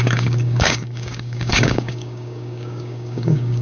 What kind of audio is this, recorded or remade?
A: remade